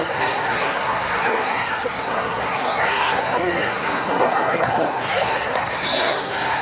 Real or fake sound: fake